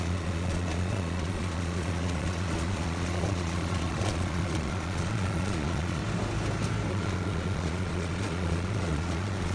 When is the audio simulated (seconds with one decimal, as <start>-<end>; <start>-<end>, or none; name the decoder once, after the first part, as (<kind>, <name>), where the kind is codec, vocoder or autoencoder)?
0.0-6.0 (vocoder, Vocos); 6.9-9.5